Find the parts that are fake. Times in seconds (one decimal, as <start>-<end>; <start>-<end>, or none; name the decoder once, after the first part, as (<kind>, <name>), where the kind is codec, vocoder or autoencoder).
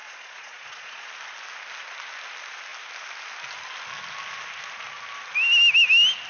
0.0-1.1 (vocoder, Vocos)